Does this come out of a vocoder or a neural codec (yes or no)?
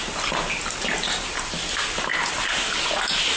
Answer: no